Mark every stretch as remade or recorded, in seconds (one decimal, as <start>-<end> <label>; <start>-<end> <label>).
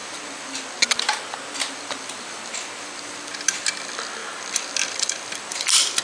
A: 0.0-4.2 recorded; 4.2-6.0 remade